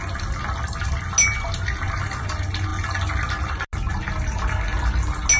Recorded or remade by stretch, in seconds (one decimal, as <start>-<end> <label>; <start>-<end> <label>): 0.0-5.4 recorded